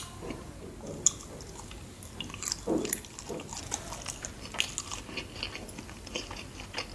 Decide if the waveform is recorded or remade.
recorded